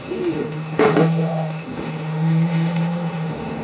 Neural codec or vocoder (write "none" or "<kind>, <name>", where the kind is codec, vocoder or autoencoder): autoencoder, DAC-VAE